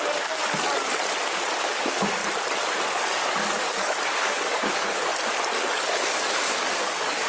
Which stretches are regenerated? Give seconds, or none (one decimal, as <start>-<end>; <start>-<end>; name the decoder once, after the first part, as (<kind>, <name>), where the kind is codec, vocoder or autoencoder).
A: 0.0-0.4 (codec, DAC); 1.6-2.2; 2.9-5.1; 5.7-7.3